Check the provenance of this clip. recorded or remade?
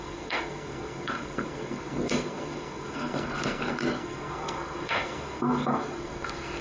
remade